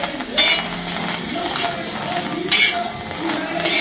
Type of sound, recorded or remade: recorded